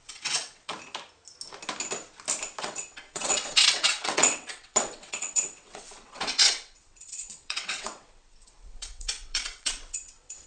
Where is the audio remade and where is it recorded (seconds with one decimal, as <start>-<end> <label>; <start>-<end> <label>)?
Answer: 0.0-0.7 remade; 0.7-2.6 recorded; 2.6-10.5 remade